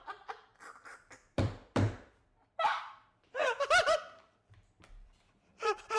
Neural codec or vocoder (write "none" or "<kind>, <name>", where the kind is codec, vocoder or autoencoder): vocoder, BigVGAN v2